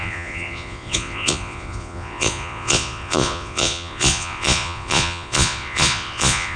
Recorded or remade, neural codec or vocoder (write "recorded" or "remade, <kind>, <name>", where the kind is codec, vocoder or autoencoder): remade, vocoder, Vocos